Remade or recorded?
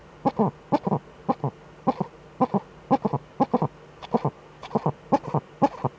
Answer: recorded